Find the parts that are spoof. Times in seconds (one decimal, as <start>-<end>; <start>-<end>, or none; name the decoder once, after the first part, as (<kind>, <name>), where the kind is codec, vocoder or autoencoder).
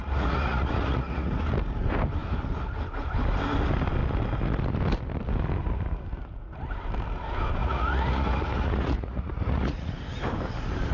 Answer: 0.0-1.5 (vocoder, Vocos); 7.6-9.9